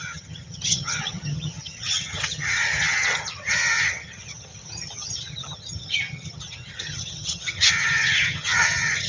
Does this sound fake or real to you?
fake